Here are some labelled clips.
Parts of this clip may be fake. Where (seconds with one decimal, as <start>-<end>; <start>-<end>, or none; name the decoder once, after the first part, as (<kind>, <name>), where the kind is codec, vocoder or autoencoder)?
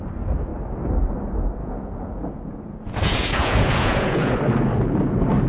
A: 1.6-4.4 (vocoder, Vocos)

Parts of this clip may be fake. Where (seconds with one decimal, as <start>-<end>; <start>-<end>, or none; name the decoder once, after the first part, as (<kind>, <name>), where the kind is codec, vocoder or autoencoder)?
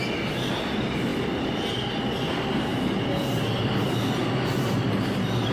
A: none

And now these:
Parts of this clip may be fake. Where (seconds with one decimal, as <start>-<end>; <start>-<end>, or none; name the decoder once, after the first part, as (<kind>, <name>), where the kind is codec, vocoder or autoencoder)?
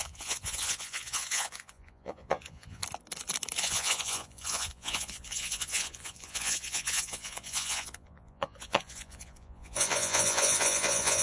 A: 0.0-2.8 (vocoder, Vocos); 3.6-11.2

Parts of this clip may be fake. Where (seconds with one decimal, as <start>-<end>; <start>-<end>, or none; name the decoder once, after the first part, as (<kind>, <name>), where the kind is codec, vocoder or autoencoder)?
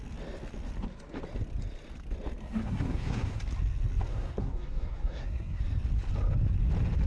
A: 2.4-3.4 (codec, SNAC); 4.1-5.6